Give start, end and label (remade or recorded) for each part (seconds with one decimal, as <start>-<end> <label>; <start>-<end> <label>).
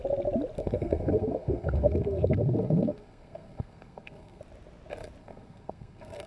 0.0-0.6 recorded; 0.6-4.4 remade; 4.4-5.2 recorded; 5.2-6.3 remade